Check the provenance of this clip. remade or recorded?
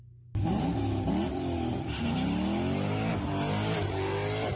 recorded